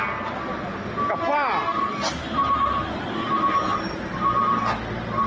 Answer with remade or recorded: recorded